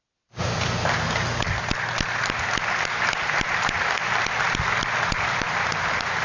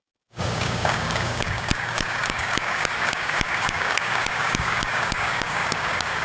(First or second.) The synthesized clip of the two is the second